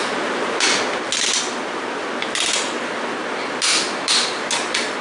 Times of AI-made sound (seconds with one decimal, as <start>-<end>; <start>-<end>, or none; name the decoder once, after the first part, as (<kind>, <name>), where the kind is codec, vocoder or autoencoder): none

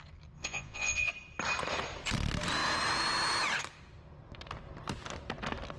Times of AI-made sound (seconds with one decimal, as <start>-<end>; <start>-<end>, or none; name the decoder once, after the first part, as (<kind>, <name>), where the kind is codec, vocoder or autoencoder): 0.4-1.1 (vocoder, Vocos)

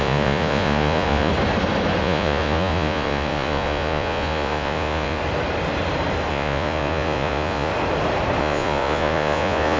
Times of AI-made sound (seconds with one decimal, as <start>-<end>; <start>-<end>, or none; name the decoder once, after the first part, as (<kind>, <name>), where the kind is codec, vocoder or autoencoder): 0.0-1.3 (vocoder, Vocos); 2.0-5.2; 6.3-7.7; 8.4-9.8

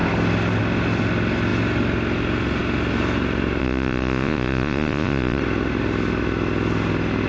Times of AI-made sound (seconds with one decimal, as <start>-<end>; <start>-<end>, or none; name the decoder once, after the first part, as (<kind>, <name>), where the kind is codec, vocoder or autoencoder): 3.6-5.4 (vocoder, Vocos)

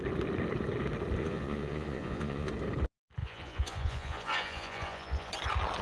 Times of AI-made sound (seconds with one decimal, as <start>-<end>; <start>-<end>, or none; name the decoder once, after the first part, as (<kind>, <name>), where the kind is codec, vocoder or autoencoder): 1.2-2.5 (vocoder, Vocos); 3.2-5.3

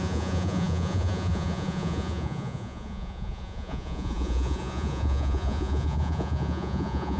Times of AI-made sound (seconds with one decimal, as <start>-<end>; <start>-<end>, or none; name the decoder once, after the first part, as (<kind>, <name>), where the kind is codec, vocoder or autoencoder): 0.0-7.2 (vocoder, Vocos)

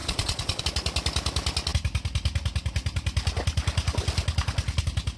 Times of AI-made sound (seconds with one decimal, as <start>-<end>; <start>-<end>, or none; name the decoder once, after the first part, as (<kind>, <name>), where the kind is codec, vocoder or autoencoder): 0.0-0.6 (vocoder, Vocos)